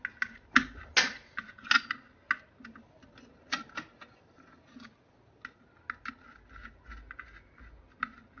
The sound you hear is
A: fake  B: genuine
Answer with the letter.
B